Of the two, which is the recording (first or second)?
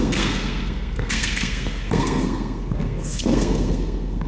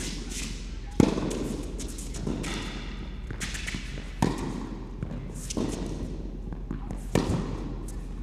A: second